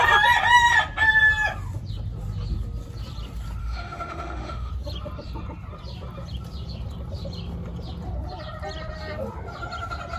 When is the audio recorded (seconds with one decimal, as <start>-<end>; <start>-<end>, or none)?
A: 0.0-3.6; 4.7-10.2